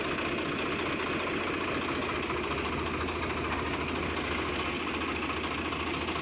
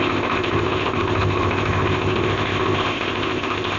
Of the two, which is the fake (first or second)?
second